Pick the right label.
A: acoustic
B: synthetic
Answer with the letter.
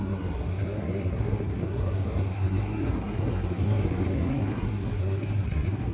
B